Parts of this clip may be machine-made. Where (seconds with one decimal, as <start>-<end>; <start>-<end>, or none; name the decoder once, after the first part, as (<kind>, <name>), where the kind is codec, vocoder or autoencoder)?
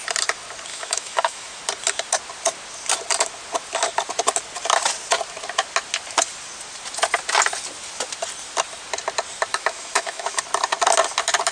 0.7-1.6 (autoencoder, DAC-VAE); 9.5-10.4